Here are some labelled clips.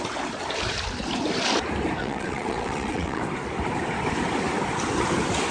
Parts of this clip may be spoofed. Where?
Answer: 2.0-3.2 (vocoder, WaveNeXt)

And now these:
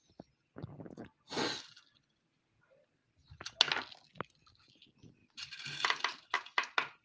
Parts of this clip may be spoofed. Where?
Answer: 5.2-6.0 (vocoder, BigVGAN v2)

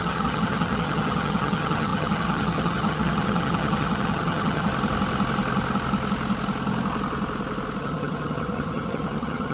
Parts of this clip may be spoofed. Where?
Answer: 0.0-4.7 (vocoder, HiFi-GAN); 7.8-9.5

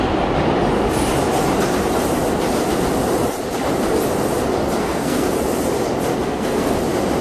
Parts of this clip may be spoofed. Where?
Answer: 4.8-5.4 (codec, SNAC); 6.1-6.8

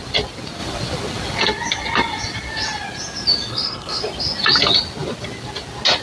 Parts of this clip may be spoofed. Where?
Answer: 3.5-4.0 (codec, HILCodec)

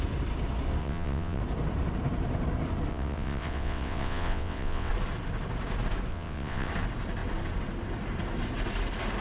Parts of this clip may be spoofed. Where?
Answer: 0.8-1.4 (vocoder, WaveNeXt); 2.9-4.9; 6.1-6.7

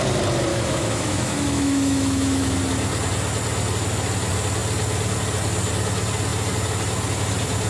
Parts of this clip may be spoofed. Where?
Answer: 0.5-2.6 (autoencoder, DAC-VAE)